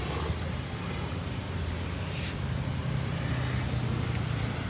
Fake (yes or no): no